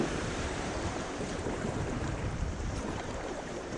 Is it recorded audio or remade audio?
remade